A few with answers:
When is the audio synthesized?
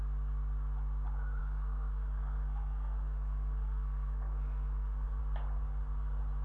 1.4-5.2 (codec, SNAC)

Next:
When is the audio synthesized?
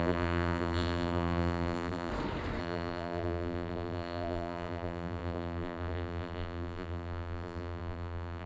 0.0-2.1 (vocoder, BigVGAN v2); 2.6-8.5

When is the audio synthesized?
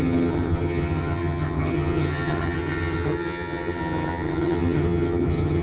0.0-5.6 (vocoder, HiFi-GAN)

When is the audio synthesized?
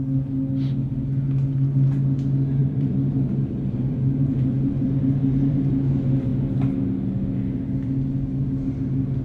2.6-5.7 (vocoder, BigVGAN v2)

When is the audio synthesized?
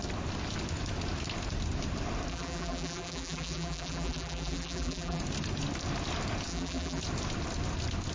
2.3-5.2 (vocoder, BigVGAN v2); 6.5-7.0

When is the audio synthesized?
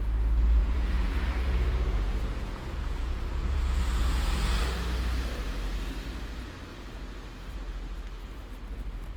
0.6-4.6 (vocoder, Vocos)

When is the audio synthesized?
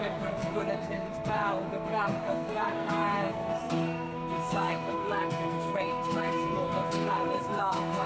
0.0-8.1 (codec, SNAC)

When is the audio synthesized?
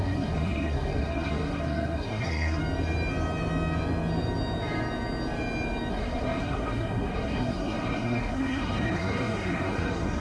0.0-2.6 (codec, SNAC); 5.9-10.2